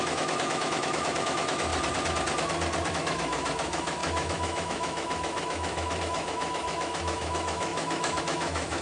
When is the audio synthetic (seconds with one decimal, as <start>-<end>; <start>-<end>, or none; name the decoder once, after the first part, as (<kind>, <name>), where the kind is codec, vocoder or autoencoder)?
0.0-1.7 (autoencoder, DAC-VAE); 2.9-8.8